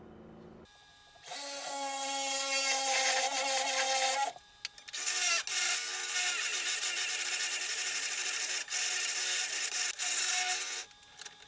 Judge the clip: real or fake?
real